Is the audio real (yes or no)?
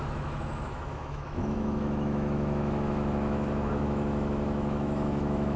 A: no